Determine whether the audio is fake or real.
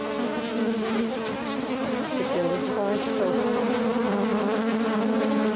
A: real